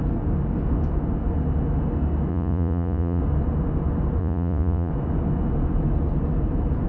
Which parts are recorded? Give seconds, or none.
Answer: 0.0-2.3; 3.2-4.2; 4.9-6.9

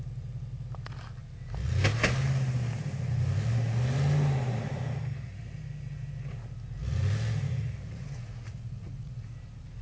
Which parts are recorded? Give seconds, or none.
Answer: 0.0-7.9; 9.3-9.8

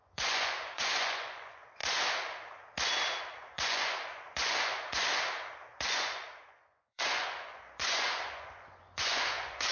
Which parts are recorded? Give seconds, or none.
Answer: 1.8-3.2; 5.0-5.7

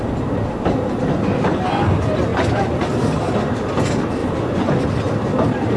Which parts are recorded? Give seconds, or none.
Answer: 0.0-4.2; 4.8-5.8

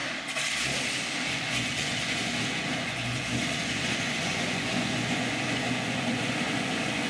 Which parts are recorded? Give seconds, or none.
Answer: 0.0-1.3